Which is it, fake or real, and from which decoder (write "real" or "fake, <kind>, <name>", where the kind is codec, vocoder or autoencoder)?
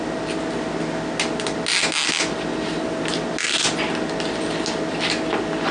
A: real